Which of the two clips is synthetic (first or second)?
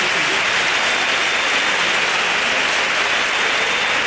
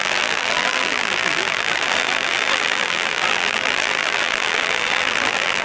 second